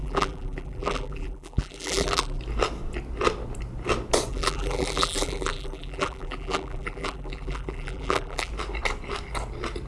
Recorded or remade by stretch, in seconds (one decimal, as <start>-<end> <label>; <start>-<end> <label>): 0.0-2.4 remade; 2.4-4.3 recorded; 4.3-8.5 remade; 8.5-9.9 recorded